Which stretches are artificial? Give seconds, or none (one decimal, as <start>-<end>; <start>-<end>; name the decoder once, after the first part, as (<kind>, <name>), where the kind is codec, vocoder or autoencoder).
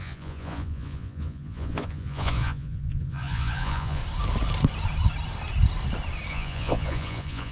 0.0-4.0 (vocoder, Vocos); 6.3-7.5